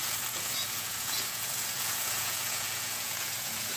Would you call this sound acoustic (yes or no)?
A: no